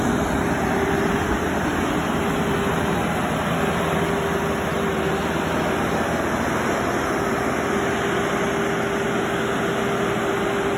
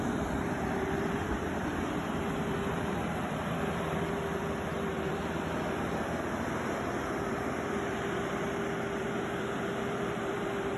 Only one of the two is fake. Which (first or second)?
second